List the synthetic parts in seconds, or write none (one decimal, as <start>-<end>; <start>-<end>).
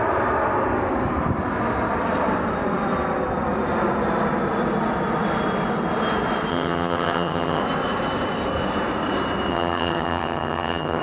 6.5-7.6; 9.5-11.0